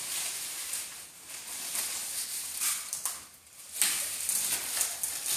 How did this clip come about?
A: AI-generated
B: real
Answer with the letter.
B